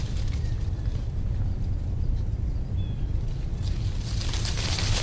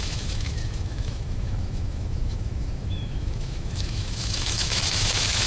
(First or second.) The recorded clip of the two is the first